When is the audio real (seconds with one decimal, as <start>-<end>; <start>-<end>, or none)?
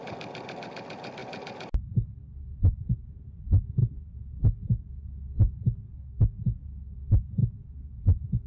0.0-8.5